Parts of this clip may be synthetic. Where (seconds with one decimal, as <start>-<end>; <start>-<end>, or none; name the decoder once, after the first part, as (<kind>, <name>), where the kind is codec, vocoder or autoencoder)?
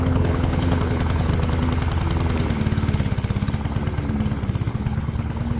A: 0.0-1.3 (codec, HILCodec); 4.7-5.6